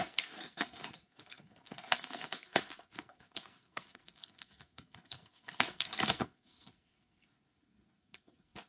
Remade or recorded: remade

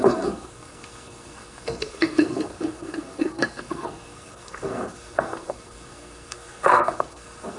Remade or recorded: remade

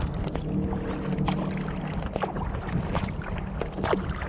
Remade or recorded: recorded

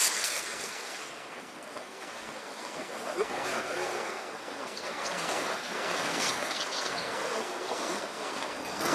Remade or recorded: remade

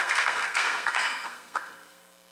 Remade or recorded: remade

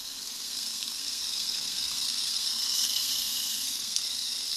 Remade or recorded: remade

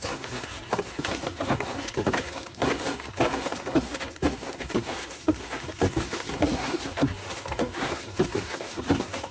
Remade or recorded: remade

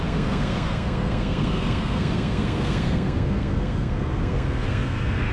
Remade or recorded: remade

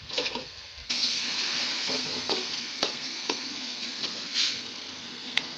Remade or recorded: remade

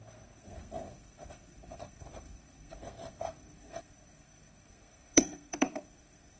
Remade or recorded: remade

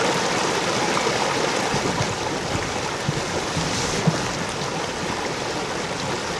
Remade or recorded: recorded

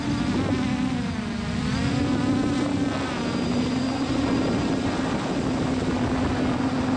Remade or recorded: recorded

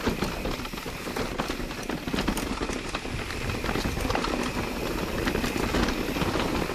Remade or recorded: recorded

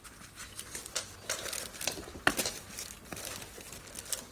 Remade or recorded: recorded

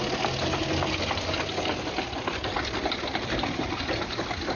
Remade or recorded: recorded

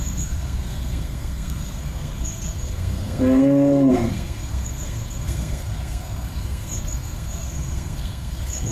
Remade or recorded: remade